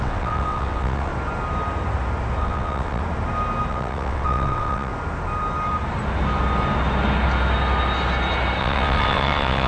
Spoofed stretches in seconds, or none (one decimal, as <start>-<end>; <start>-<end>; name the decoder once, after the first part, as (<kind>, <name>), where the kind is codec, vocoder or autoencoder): 0.0-1.1 (vocoder, WaveNeXt); 2.4-3.0; 3.7-4.9; 8.6-9.7